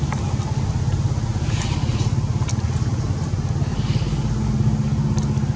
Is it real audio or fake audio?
real